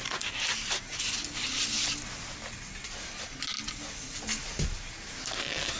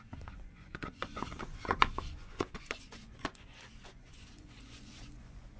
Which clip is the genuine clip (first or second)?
first